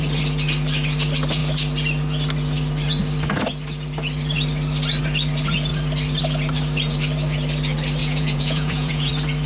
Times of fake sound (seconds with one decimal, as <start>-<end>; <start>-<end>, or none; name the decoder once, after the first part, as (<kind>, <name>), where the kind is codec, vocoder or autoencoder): 8.0-9.1 (vocoder, Vocos)